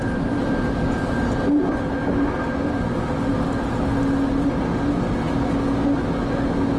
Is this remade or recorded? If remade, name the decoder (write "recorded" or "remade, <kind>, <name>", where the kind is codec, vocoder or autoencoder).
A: recorded